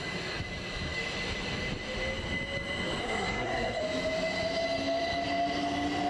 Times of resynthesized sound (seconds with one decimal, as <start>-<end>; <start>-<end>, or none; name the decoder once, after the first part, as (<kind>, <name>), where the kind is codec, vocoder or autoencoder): 3.0-3.8 (codec, SNAC)